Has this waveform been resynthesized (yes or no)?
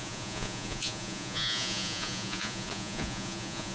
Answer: yes